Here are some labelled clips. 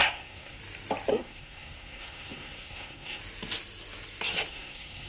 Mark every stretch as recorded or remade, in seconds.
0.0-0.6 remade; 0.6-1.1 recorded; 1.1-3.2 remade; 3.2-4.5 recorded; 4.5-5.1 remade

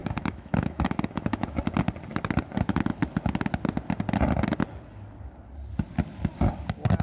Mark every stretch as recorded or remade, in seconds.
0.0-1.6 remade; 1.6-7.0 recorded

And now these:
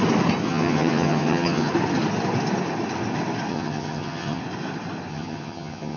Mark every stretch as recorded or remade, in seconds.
0.0-0.5 recorded; 0.5-1.7 remade; 1.7-3.5 recorded; 3.5-4.4 remade; 4.4-5.1 recorded; 5.1-6.0 remade